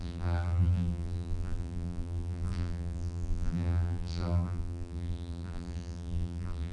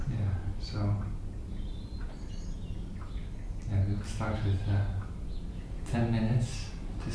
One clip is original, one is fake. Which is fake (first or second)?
first